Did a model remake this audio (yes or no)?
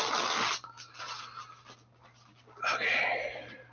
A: no